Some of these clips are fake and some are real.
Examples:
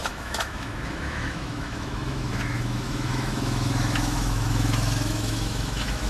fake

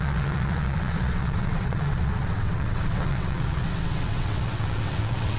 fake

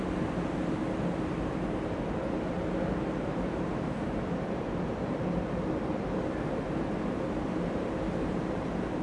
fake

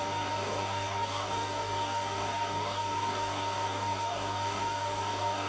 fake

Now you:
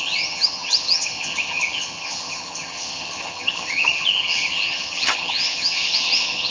fake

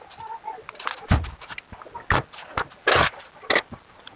real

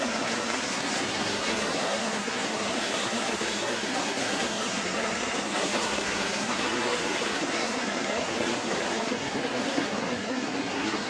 fake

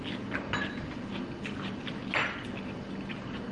real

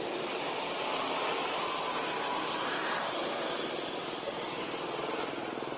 real